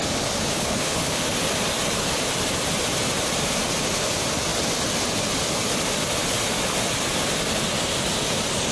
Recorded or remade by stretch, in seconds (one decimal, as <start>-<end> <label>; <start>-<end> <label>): 0.0-0.5 recorded; 0.5-1.2 remade; 1.2-8.7 recorded